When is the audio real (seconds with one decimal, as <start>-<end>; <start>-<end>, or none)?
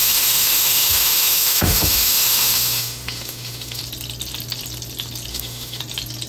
3.8-5.3; 5.8-6.3